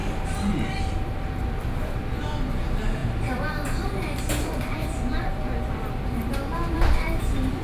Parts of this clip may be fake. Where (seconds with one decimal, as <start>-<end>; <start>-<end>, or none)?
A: 0.0-7.6